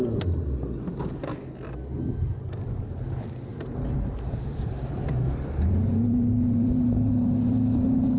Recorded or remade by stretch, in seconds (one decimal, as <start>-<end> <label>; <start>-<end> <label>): 0.0-3.5 recorded; 3.5-8.2 remade